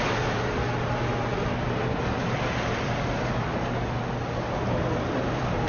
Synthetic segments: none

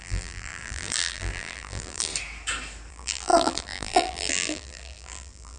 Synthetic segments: 0.0-2.1 (vocoder, BigVGAN v2); 2.9-5.6

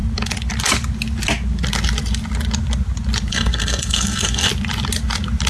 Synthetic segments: 3.3-4.5 (codec, SNAC)

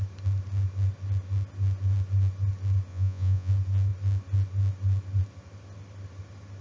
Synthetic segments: 2.9-3.5 (vocoder, Vocos)

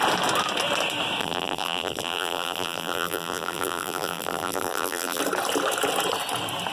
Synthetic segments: 1.2-5.2 (vocoder, BigVGAN v2)